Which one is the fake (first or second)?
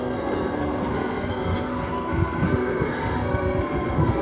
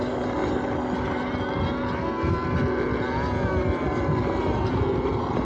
first